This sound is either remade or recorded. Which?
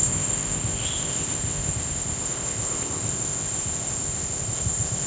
remade